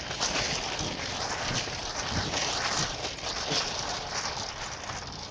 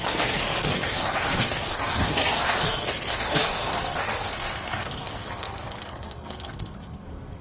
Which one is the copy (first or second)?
second